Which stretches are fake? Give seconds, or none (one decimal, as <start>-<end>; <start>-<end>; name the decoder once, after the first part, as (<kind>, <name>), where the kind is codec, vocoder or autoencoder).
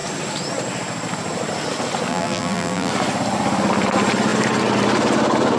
2.1-2.9 (vocoder, BigVGAN v2)